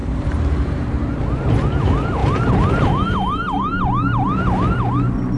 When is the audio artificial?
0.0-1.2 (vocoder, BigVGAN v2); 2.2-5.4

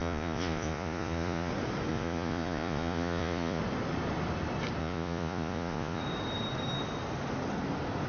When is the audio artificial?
0.0-1.5 (vocoder, Vocos); 1.9-3.6; 4.8-6.0

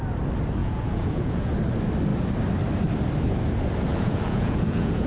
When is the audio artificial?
0.6-1.5 (vocoder, Vocos); 3.9-5.1

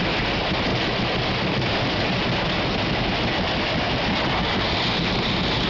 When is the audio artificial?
none

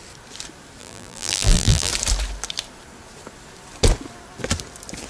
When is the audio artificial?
0.8-1.9 (vocoder, BigVGAN v2)

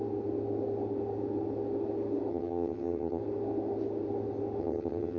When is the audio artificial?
2.3-3.2 (vocoder, HiFi-GAN); 4.6-5.2

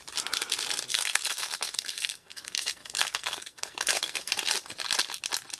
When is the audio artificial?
0.9-4.3 (codec, SNAC)

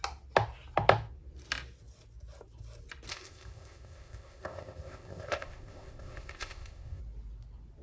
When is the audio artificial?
3.1-7.0 (codec, ZipCodec)